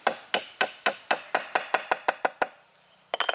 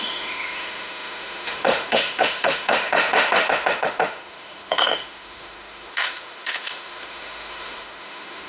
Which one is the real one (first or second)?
first